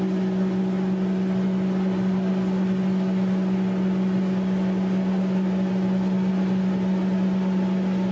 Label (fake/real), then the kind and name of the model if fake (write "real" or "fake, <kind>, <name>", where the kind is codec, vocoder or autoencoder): real